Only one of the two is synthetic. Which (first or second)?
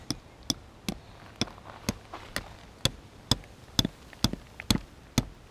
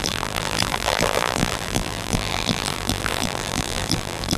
second